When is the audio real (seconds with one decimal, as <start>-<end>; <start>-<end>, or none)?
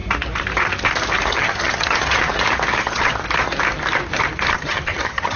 0.0-1.3; 2.3-2.8; 3.2-4.5